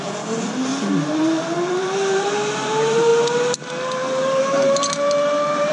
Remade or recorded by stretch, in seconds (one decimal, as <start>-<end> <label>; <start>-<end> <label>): 0.0-3.1 remade; 3.1-4.4 recorded; 4.4-5.7 remade